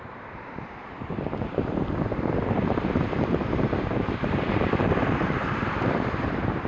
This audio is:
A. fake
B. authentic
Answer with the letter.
A